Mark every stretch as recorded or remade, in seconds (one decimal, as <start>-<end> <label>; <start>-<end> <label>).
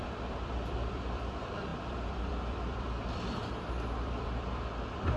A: 0.0-5.2 remade